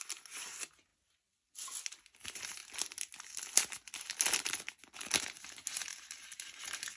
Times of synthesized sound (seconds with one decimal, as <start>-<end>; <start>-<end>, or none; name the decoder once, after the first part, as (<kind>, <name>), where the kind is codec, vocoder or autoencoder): 5.9-6.6 (vocoder, BigVGAN v2)